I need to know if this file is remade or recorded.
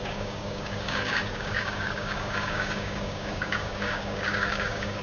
remade